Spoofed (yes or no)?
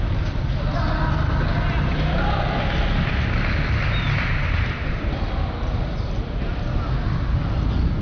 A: no